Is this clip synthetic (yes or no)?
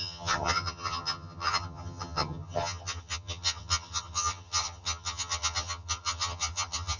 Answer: yes